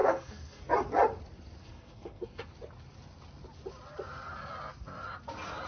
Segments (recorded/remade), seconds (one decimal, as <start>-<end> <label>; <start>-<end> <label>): 0.0-0.6 remade; 0.6-1.6 recorded; 1.6-2.5 remade; 2.5-5.7 recorded